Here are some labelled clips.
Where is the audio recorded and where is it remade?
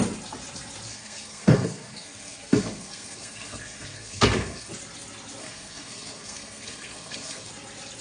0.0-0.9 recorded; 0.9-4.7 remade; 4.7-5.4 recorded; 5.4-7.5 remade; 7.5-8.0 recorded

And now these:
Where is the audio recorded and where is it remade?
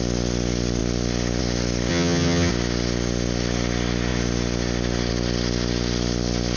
0.0-1.9 recorded; 1.9-2.5 remade; 2.5-6.6 recorded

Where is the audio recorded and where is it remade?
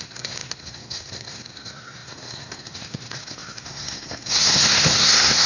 0.0-5.5 remade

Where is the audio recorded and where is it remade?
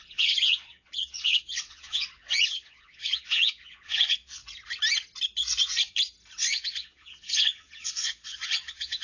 0.0-4.4 remade; 4.4-6.4 recorded; 6.4-9.0 remade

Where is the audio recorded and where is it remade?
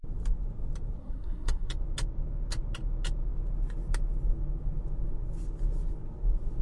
0.0-1.0 recorded; 1.0-1.7 remade; 1.7-6.6 recorded